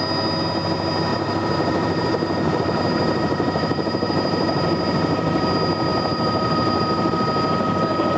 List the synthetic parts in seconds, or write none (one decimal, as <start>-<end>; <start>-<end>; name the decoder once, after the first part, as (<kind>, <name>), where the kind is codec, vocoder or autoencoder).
1.1-5.5 (vocoder, BigVGAN v2); 5.9-7.1